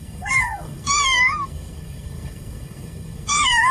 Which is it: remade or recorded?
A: remade